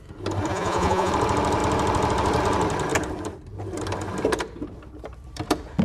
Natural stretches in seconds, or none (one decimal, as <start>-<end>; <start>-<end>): 0.0-0.5; 1.1-5.8